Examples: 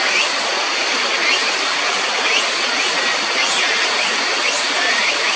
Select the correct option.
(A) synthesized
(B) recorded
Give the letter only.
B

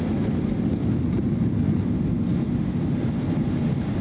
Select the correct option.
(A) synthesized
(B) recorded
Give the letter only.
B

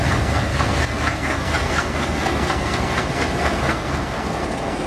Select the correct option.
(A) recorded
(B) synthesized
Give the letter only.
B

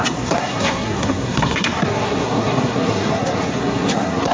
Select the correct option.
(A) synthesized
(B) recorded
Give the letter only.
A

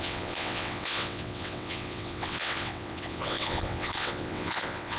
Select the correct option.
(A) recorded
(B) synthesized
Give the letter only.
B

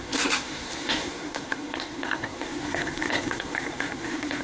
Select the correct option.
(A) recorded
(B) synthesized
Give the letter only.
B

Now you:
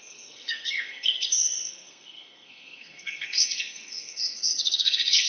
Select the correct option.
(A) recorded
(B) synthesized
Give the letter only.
B